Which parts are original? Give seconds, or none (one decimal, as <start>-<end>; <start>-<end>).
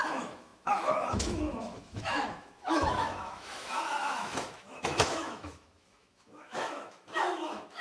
none